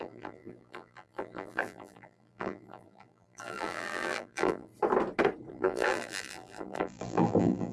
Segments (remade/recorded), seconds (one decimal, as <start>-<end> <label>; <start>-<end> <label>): 0.0-4.7 remade; 4.7-5.5 recorded; 5.5-7.7 remade